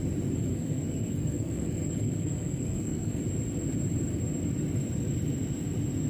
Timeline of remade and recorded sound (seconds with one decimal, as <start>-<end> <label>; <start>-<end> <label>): 0.0-0.5 recorded; 0.5-3.2 remade; 3.2-6.1 recorded